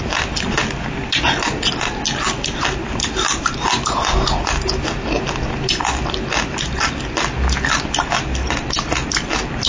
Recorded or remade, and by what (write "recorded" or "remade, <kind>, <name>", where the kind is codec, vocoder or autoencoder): recorded